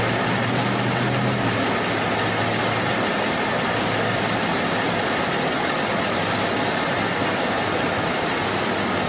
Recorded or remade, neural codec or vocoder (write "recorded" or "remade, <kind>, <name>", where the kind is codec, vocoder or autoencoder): recorded